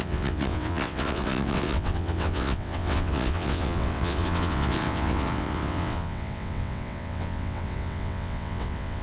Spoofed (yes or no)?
yes